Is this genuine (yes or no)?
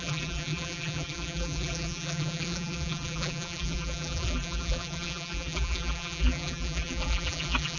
no